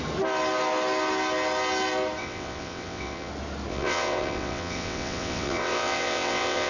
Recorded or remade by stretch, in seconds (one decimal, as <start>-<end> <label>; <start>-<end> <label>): 0.0-2.2 recorded; 2.2-3.3 remade; 3.3-3.7 recorded; 3.7-6.7 remade

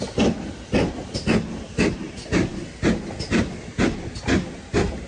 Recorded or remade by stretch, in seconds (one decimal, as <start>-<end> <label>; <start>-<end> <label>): 0.0-5.1 recorded

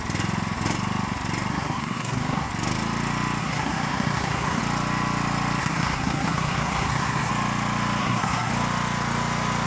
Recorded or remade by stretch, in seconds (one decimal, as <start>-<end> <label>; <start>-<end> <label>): 0.0-1.5 recorded; 1.5-2.5 remade; 2.5-3.4 recorded; 3.4-4.6 remade; 4.6-5.6 recorded; 5.6-7.3 remade; 7.3-8.0 recorded; 8.0-8.5 remade; 8.5-9.7 recorded

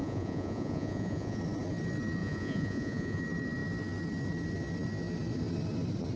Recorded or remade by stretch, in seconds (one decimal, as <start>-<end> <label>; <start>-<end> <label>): 0.0-1.4 remade; 1.4-2.2 recorded; 2.2-3.2 remade; 3.2-6.2 recorded

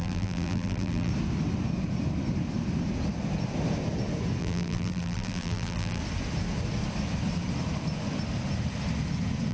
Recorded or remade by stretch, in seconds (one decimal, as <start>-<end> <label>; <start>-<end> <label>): 0.0-1.1 remade; 1.1-4.4 recorded; 4.4-6.0 remade; 6.0-9.5 recorded

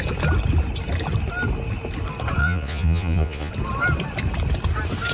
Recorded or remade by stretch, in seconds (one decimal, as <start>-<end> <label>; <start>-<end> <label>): 0.0-2.4 recorded; 2.4-3.5 remade; 3.5-5.1 recorded

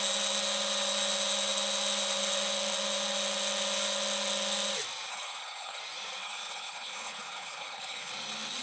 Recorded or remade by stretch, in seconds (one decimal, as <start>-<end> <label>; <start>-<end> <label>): 0.0-5.1 recorded; 5.1-5.8 remade; 5.8-6.2 recorded; 6.2-8.1 remade; 8.1-8.6 recorded

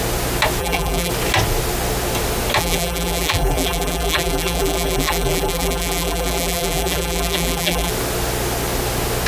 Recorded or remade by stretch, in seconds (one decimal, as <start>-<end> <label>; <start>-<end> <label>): 0.0-0.6 recorded; 0.6-1.1 remade; 1.1-2.6 recorded; 2.6-7.9 remade; 7.9-9.3 recorded